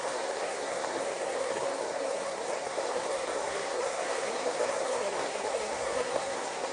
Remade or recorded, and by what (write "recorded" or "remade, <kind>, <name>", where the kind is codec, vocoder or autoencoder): remade, codec, SNAC